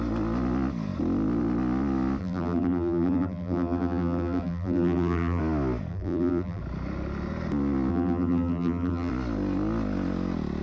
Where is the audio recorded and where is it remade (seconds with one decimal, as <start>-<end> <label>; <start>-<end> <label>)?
0.0-2.2 recorded; 2.2-5.4 remade; 5.4-5.9 recorded; 5.9-6.6 remade; 6.6-7.9 recorded; 7.9-9.1 remade; 9.1-10.6 recorded